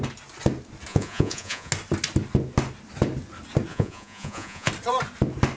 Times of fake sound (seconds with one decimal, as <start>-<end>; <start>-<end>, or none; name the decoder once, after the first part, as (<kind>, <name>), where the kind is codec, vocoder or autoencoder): 0.9-1.7 (vocoder, Vocos); 3.7-4.7